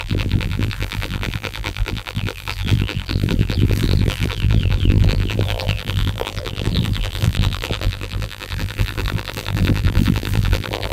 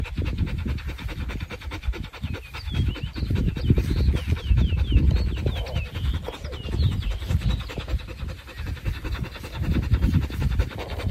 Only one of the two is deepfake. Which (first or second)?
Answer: first